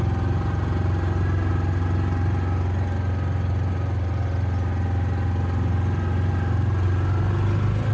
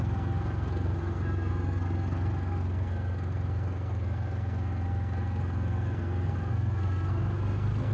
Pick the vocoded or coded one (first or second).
second